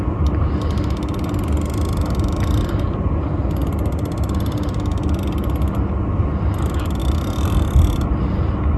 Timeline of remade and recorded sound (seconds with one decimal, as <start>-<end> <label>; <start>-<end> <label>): 0.0-8.8 recorded